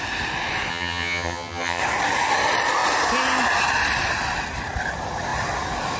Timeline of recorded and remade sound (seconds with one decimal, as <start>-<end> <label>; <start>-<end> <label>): 0.0-0.7 recorded; 0.7-1.8 remade; 1.8-6.0 recorded